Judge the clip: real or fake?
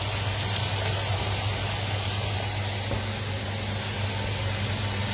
real